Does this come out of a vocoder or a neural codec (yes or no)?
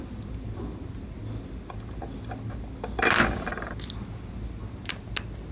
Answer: no